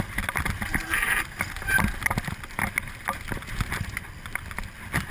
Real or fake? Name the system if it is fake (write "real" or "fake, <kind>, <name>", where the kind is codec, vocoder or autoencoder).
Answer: real